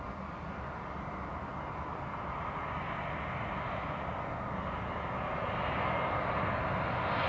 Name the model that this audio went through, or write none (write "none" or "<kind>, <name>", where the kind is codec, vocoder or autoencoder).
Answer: none